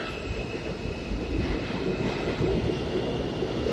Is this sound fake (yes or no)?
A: no